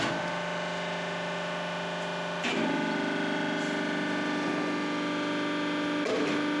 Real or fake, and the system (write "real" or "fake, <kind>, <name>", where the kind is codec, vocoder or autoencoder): real